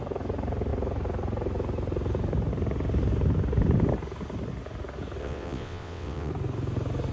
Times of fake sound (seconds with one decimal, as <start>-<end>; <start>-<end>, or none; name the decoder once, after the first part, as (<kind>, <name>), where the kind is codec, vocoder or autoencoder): 5.2-6.3 (vocoder, WaveNeXt)